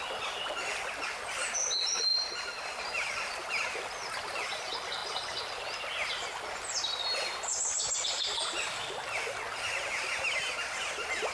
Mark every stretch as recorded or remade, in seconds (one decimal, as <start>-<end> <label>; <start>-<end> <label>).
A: 0.0-11.3 recorded